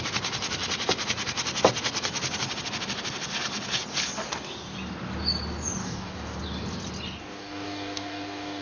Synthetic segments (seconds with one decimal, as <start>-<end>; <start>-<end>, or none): 5.8-6.4; 7.2-8.6